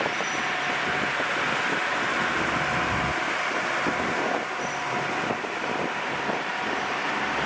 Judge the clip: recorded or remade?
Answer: remade